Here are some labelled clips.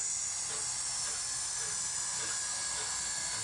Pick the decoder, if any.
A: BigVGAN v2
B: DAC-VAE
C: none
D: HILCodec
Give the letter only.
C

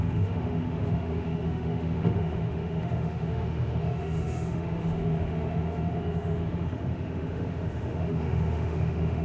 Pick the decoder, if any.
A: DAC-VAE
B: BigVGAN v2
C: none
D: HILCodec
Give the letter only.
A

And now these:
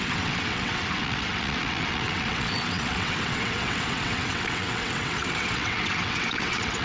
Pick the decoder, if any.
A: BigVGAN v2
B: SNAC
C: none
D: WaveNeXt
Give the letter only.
D